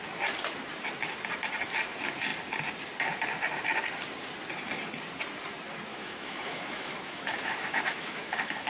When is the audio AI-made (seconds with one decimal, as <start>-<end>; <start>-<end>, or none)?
5.9-8.7